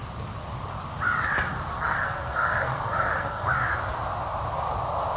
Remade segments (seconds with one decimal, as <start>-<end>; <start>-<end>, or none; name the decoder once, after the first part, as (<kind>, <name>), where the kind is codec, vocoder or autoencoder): 1.7-3.5 (codec, SNAC)